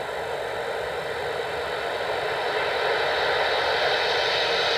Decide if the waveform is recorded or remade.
recorded